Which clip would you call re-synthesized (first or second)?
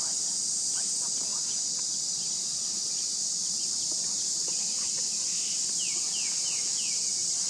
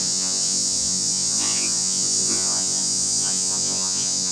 second